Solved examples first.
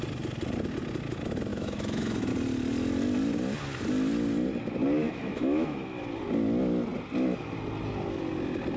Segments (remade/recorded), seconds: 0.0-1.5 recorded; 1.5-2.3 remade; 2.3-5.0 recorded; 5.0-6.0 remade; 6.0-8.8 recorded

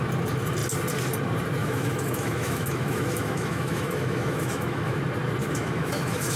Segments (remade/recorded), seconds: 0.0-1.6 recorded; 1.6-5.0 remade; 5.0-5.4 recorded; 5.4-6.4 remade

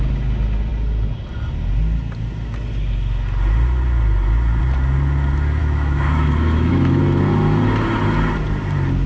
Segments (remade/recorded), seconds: 0.0-5.6 recorded; 5.6-7.0 remade; 7.0-9.1 recorded